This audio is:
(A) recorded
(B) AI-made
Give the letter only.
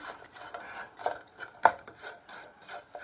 B